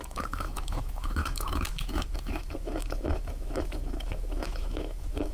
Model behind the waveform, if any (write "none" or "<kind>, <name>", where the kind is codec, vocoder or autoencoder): autoencoder, DAC-VAE